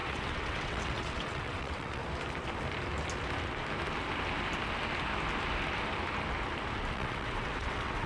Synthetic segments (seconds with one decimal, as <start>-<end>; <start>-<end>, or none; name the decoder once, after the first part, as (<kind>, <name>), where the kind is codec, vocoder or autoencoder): 0.0-2.0 (vocoder, WaveNeXt); 6.9-8.1